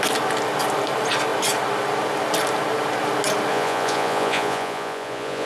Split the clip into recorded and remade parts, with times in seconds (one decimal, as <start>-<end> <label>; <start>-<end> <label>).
0.0-3.5 recorded; 3.5-5.5 remade